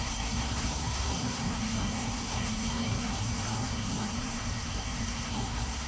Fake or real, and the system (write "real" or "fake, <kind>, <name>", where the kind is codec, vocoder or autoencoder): fake, codec, SNAC